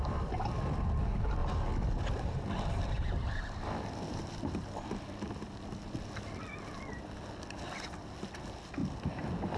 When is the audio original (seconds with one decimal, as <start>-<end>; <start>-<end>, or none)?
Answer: 1.0-1.4; 6.0-9.6